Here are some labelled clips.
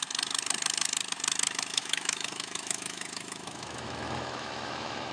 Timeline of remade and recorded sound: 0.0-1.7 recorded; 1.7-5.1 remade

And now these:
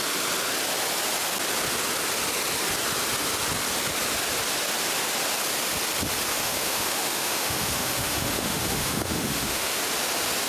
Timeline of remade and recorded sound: 0.0-6.3 recorded; 6.3-9.8 remade; 9.8-10.5 recorded